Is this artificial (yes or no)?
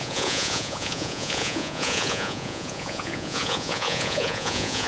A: yes